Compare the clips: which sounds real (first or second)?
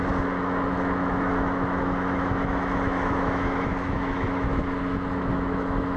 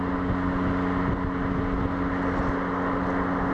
second